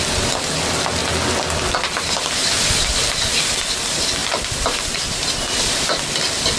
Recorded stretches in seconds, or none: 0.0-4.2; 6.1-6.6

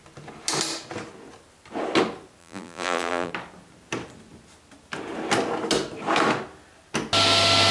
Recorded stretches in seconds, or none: 0.0-2.4; 3.3-7.7

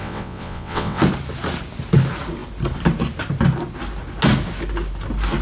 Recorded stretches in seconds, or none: 1.0-5.4

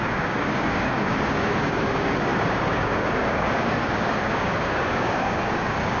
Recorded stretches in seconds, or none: none

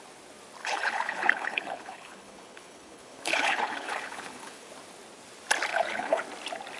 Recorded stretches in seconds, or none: 0.0-0.6; 4.7-5.7; 6.2-6.8

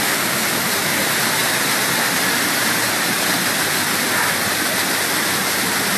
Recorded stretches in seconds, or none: 0.0-6.0

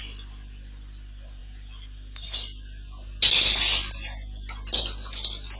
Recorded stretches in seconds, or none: 0.0-5.6

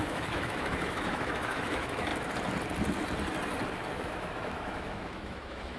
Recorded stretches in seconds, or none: 2.1-3.9